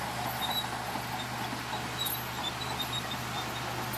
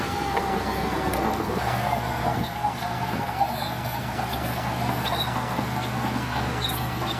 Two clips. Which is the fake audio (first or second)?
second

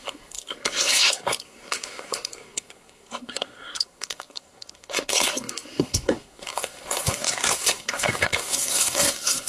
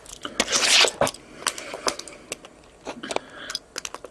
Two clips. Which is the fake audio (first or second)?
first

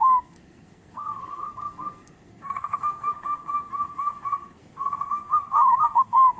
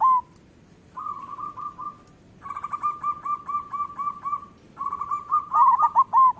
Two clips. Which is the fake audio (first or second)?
first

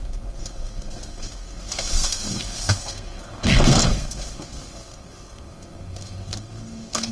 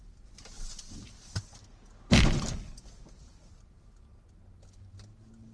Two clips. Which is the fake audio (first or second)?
first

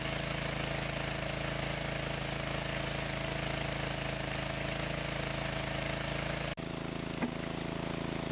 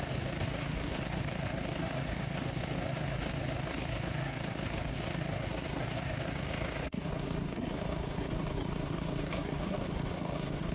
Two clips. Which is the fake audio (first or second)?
second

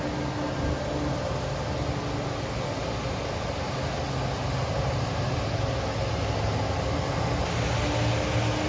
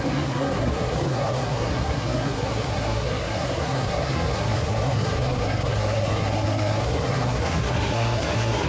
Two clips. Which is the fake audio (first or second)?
second